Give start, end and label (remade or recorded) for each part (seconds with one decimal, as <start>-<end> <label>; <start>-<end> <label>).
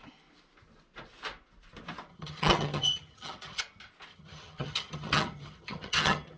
0.0-2.1 recorded; 2.1-3.6 remade; 3.6-4.1 recorded; 4.1-6.4 remade